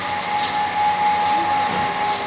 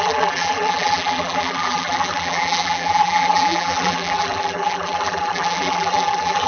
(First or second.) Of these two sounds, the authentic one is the first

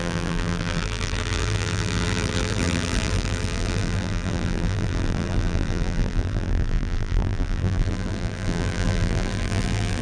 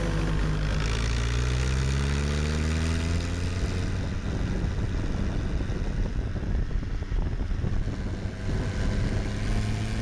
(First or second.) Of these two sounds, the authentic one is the second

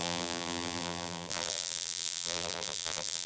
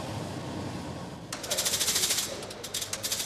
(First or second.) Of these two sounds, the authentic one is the second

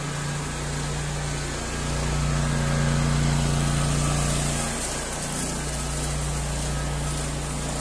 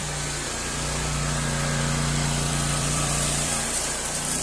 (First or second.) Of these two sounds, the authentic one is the first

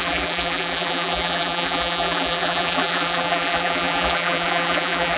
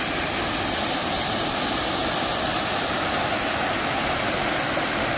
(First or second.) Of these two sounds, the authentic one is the second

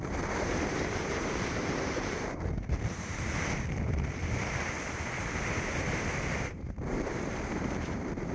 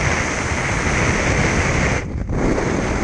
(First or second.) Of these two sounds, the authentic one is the second